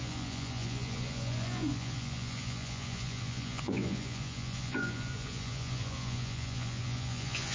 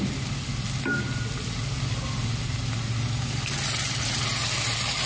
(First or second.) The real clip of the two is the second